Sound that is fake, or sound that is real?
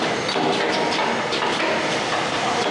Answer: real